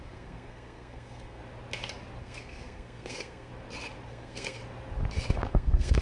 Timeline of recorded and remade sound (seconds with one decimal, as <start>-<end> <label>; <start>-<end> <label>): 0.0-1.4 remade; 1.4-2.2 recorded; 2.2-3.5 remade; 3.5-4.1 recorded; 4.1-4.6 remade; 4.6-5.5 recorded; 5.5-6.0 remade